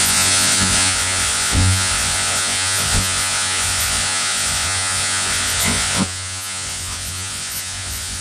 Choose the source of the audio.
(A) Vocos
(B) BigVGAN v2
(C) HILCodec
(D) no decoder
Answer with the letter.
A